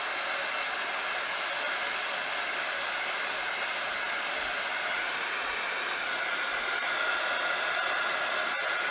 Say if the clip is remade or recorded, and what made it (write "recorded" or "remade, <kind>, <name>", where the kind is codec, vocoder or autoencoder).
recorded